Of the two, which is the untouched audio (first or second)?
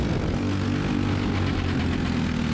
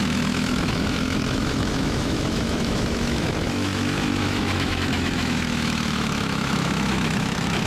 first